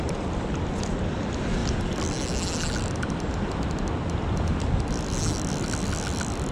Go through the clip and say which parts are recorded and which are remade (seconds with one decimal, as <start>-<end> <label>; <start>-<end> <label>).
0.0-6.5 recorded